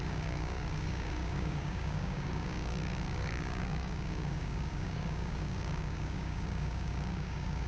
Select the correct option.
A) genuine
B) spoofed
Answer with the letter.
B